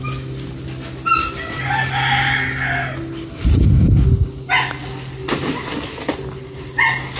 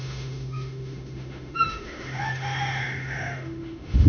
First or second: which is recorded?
first